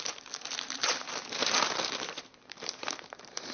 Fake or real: fake